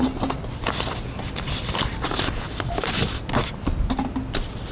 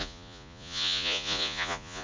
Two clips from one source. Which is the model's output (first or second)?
second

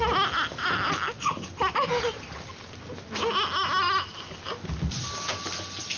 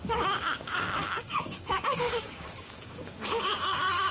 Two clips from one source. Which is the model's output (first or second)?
second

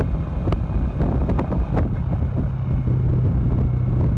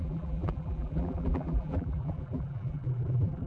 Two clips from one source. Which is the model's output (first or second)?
second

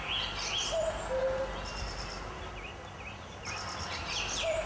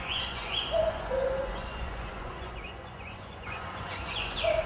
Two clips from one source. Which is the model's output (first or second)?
second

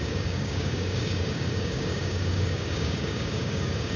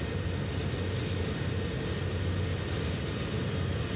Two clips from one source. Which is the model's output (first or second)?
first